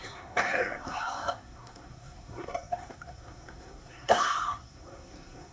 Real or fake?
fake